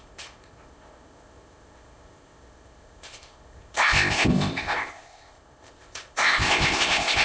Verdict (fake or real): fake